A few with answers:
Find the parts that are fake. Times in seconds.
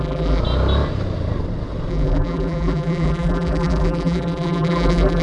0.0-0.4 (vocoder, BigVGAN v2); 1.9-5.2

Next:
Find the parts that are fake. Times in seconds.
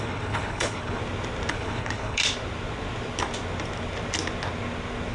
0.0-1.0 (codec, HILCodec); 1.5-2.2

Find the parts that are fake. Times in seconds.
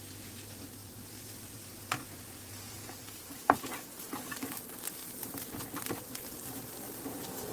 0.8-1.6 (vocoder, BigVGAN v2); 2.0-3.6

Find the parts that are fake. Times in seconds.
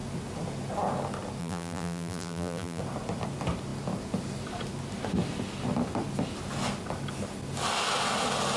1.4-2.8 (vocoder, BigVGAN v2)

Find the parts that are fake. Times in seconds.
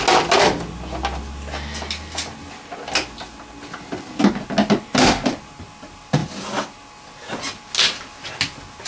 none